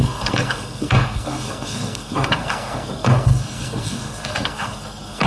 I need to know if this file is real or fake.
fake